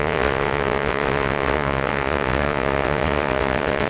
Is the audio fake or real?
fake